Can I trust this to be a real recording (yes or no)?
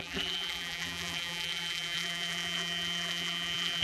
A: no